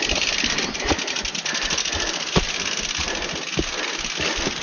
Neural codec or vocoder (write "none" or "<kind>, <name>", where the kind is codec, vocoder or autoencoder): vocoder, BigVGAN v2